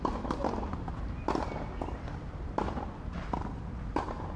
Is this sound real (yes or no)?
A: yes